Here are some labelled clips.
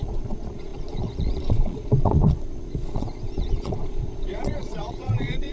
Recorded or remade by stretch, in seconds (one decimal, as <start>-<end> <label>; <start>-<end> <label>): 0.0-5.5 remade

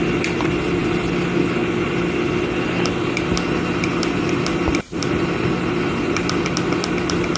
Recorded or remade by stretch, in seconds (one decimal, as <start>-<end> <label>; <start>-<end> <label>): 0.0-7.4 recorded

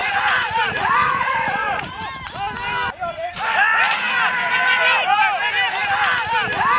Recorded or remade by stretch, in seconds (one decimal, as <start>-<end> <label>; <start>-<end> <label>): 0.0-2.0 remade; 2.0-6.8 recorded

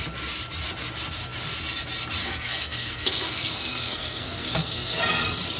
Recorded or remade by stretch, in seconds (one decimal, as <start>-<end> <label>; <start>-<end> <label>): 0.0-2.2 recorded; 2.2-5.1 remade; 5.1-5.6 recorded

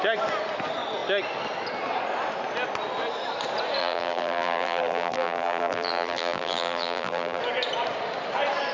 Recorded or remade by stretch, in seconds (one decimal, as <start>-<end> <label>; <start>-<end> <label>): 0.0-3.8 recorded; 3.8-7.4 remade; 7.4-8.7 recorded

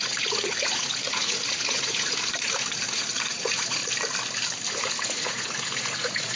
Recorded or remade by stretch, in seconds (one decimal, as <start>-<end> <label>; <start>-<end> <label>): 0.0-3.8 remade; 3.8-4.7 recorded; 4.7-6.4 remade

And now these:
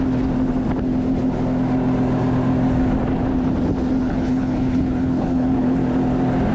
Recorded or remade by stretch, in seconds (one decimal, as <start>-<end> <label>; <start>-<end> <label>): 0.0-4.0 recorded; 4.0-5.8 remade; 5.8-6.5 recorded

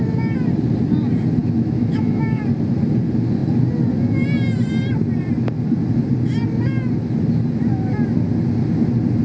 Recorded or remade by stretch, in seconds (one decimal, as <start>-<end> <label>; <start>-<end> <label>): 0.0-1.4 recorded; 1.4-2.4 remade; 2.4-9.2 recorded